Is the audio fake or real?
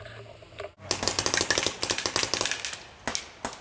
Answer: real